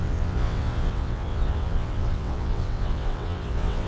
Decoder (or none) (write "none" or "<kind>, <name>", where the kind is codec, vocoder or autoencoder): vocoder, WaveNeXt